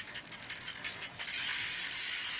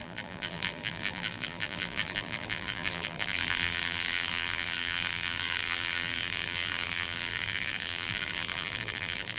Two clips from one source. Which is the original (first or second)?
first